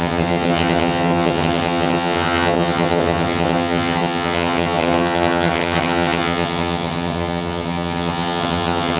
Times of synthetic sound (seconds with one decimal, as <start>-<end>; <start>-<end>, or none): 0.0-9.0